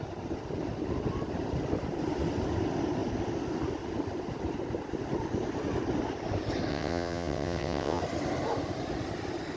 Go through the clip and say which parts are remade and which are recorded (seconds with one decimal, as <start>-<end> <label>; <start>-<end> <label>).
0.0-6.7 recorded; 6.7-8.0 remade; 8.0-9.6 recorded